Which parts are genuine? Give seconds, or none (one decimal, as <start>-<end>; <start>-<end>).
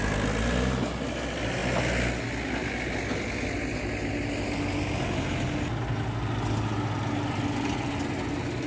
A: 0.0-8.7